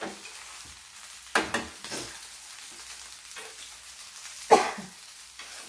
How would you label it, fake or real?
real